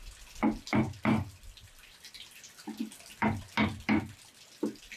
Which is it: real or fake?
real